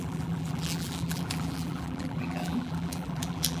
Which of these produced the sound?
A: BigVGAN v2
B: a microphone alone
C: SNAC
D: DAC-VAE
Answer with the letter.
A